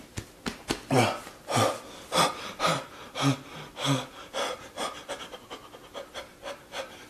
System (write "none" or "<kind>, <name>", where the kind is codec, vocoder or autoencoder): none